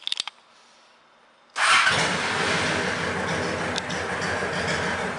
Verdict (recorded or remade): recorded